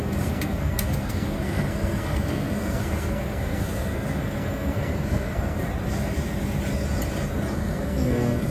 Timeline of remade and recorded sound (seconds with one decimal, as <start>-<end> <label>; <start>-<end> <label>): 0.0-5.7 remade; 5.7-7.5 recorded; 7.5-8.5 remade